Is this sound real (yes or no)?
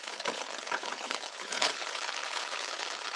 no